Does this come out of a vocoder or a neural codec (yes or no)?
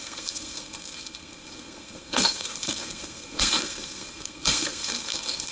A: yes